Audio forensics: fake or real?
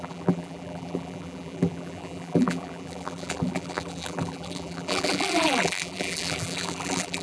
fake